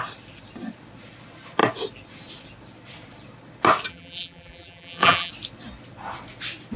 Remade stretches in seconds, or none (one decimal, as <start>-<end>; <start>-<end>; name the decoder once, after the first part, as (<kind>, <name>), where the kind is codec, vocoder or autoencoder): 3.9-5.3 (vocoder, BigVGAN v2)